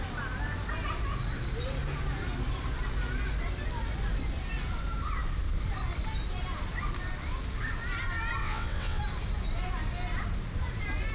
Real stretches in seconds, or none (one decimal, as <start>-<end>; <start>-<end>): 0.0-8.4; 9.0-11.1